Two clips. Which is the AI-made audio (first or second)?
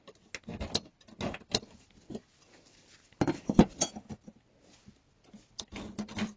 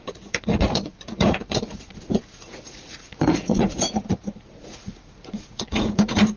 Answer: second